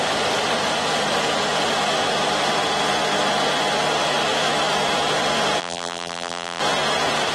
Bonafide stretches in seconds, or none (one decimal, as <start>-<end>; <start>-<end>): 0.0-5.6; 6.6-7.3